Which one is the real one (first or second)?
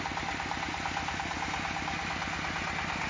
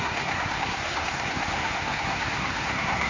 first